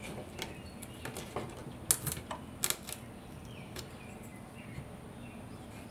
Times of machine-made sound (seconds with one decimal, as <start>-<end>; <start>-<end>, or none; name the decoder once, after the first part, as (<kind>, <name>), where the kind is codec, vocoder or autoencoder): none